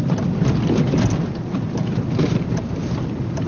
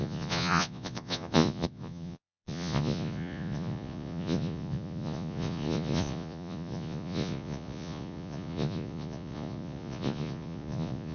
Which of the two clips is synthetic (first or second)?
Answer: second